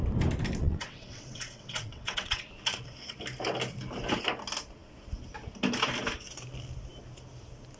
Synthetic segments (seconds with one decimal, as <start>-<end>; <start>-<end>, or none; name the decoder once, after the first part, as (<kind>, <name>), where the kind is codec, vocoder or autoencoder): 0.6-2.4 (vocoder, WaveNeXt)